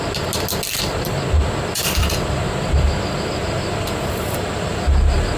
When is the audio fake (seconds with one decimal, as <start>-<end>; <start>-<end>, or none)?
none